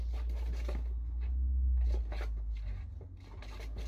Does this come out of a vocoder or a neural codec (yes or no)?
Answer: no